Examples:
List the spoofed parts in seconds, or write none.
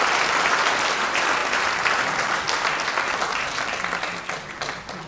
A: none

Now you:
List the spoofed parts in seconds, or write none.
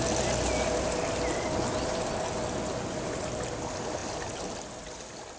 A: none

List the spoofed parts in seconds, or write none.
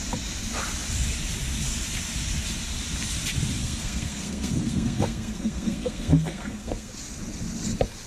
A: 3.6-6.9 (codec, SNAC)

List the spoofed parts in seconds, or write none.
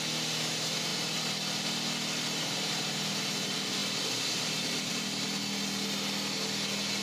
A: none